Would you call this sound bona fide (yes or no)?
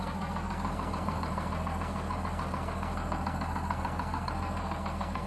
no